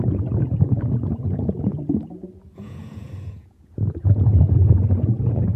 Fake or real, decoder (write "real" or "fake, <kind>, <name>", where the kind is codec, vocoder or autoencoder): fake, vocoder, Vocos